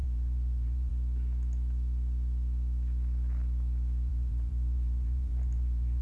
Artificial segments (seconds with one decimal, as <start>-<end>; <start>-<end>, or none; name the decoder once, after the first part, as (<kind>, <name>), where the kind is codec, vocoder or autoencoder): 0.0-0.9 (vocoder, BigVGAN v2); 4.1-6.0